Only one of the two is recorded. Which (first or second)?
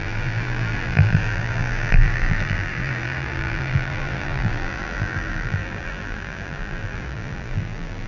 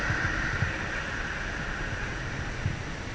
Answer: second